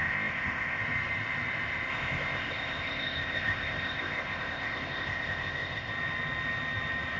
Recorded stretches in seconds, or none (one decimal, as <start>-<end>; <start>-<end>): 0.8-1.9; 5.9-7.2